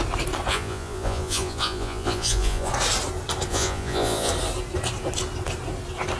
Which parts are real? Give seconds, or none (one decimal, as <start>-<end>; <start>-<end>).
0.0-0.5; 2.7-3.5; 4.3-6.2